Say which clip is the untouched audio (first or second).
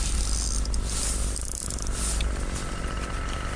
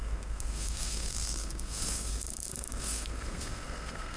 first